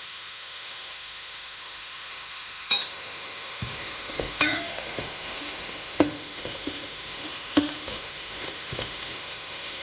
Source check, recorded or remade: remade